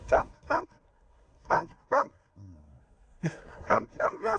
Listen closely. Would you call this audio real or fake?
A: fake